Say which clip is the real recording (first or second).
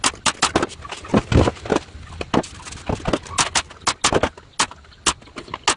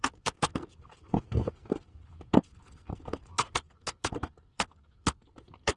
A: first